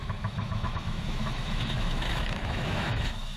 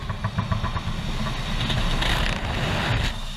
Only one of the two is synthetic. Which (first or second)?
first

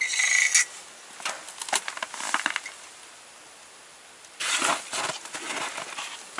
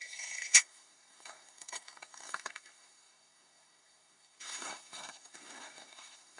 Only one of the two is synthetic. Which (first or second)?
second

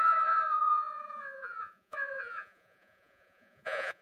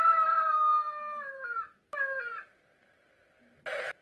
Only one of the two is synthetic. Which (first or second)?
first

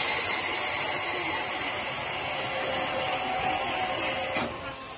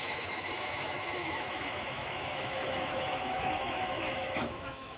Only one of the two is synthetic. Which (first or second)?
second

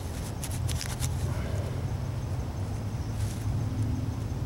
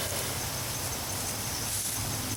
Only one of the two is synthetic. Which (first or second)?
second